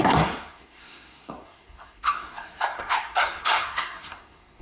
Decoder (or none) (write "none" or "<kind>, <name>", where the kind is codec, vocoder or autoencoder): codec, SNAC